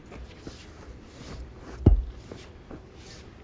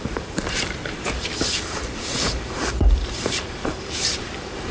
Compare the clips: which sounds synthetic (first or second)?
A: second